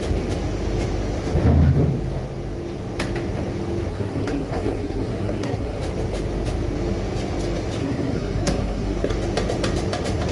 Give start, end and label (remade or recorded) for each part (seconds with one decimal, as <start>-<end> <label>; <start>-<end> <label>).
0.0-3.9 recorded; 3.9-5.8 remade; 5.8-7.8 recorded; 7.8-9.1 remade; 9.1-10.3 recorded